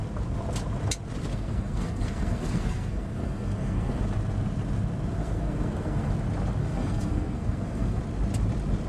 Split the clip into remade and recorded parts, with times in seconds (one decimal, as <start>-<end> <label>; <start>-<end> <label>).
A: 0.0-1.3 recorded; 1.3-4.0 remade; 4.0-5.2 recorded; 5.2-6.1 remade; 6.1-6.6 recorded; 6.6-8.0 remade; 8.0-8.9 recorded